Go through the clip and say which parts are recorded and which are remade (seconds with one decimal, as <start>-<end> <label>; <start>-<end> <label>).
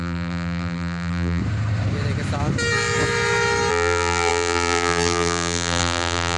0.0-1.4 remade; 1.4-3.7 recorded; 3.7-6.4 remade